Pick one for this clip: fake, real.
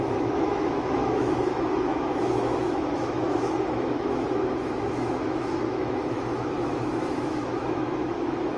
fake